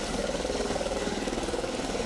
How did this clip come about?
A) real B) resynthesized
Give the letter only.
B